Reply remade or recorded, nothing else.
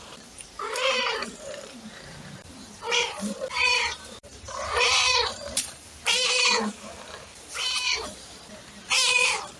remade